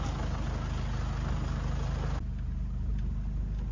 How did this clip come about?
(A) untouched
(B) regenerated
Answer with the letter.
A